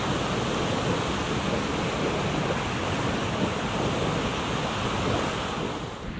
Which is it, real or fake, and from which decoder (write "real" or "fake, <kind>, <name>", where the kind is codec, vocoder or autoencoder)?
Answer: real